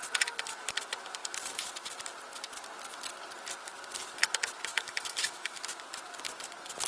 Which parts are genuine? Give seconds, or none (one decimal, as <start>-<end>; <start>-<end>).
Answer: 0.0-4.7; 5.6-6.9